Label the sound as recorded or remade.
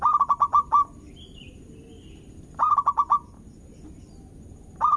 recorded